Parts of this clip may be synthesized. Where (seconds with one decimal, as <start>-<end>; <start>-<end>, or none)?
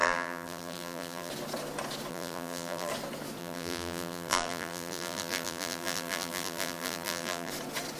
0.0-1.3; 2.1-2.9; 3.4-7.5